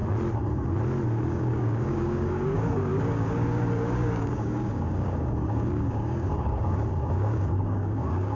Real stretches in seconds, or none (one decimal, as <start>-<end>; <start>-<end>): 0.0-1.3